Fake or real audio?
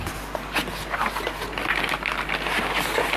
real